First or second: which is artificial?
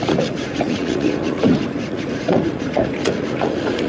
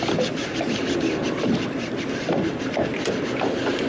first